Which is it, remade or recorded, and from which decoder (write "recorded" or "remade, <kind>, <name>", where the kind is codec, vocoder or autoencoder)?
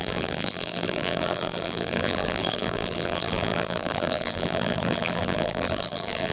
remade, vocoder, BigVGAN v2